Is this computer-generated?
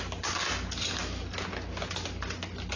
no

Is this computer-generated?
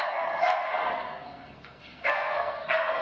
yes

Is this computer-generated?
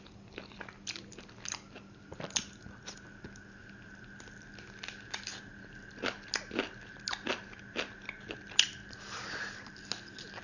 no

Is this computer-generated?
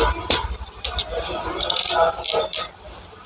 no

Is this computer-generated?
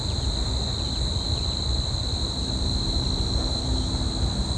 no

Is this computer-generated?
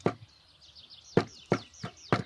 no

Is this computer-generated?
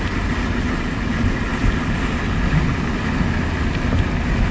no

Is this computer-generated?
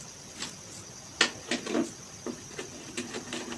no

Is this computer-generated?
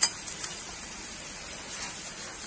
no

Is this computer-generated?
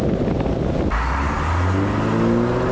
no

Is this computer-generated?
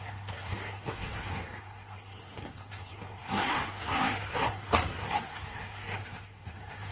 yes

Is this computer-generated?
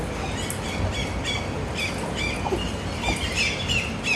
no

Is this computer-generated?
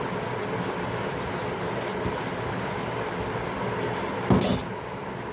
no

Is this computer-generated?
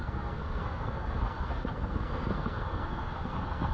yes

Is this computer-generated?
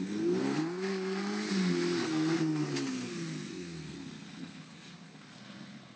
yes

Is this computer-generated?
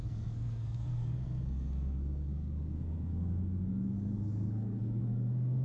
yes